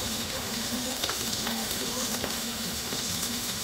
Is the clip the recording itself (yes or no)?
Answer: no